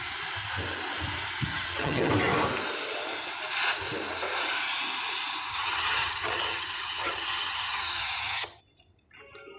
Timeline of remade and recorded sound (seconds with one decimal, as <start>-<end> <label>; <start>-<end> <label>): 0.0-1.5 recorded; 1.5-2.1 remade; 2.1-5.5 recorded; 5.5-8.6 remade; 8.6-9.6 recorded